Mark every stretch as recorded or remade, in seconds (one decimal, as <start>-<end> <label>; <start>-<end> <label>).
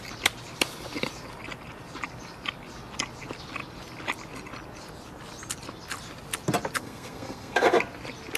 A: 0.0-6.8 recorded; 6.8-7.8 remade; 7.8-8.4 recorded